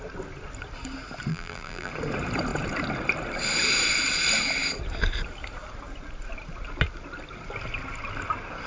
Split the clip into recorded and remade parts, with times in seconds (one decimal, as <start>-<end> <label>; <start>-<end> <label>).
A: 0.0-1.3 recorded; 1.3-1.9 remade; 1.9-8.7 recorded